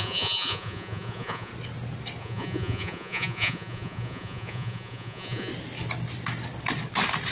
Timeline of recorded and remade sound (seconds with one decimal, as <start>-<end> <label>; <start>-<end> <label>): 0.0-1.5 remade; 1.5-2.2 recorded; 2.2-5.5 remade; 5.5-7.3 recorded